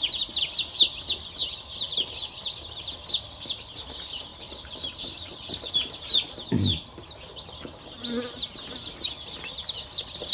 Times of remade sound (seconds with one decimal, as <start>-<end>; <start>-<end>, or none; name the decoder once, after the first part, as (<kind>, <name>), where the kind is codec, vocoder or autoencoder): 4.3-5.6 (vocoder, BigVGAN v2)

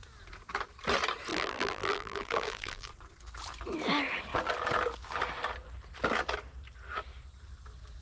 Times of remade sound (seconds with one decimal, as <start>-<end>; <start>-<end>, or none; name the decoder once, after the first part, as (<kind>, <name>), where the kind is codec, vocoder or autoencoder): 1.3-2.9 (vocoder, BigVGAN v2)

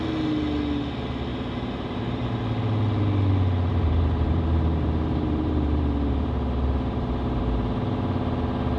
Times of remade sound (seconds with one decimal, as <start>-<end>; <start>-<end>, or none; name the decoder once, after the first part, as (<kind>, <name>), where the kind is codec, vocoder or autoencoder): 1.3-2.3 (vocoder, BigVGAN v2); 3.7-7.4

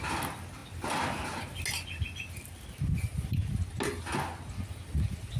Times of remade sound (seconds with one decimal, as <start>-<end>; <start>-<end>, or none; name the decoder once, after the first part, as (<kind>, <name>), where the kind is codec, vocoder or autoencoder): none

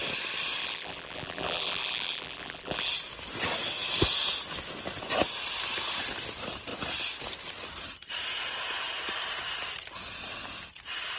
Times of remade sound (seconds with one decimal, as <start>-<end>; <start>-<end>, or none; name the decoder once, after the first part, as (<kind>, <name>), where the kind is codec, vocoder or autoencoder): 0.6-2.9 (vocoder, BigVGAN v2)

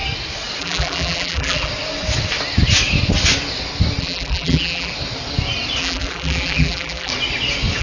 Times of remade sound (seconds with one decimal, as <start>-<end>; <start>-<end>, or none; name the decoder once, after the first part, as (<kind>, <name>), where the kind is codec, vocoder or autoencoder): 0.6-1.7 (vocoder, BigVGAN v2); 4.0-4.9; 5.8-7.1